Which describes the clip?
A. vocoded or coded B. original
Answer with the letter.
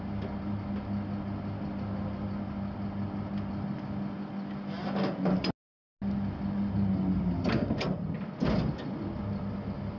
B